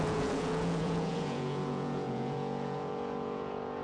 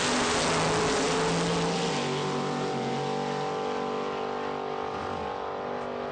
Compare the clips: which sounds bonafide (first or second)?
second